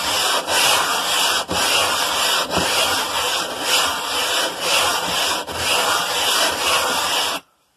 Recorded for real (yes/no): yes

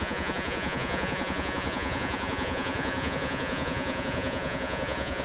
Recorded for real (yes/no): no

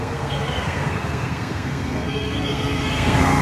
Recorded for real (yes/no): no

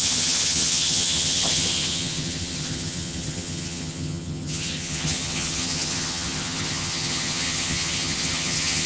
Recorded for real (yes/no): no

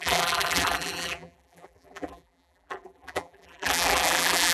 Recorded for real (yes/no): no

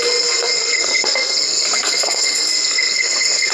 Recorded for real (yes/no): no